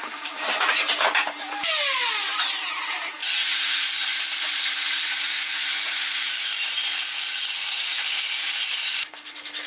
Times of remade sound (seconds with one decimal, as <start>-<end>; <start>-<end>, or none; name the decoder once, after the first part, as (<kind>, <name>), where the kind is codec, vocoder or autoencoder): 0.0-3.2 (vocoder, BigVGAN v2); 3.8-9.7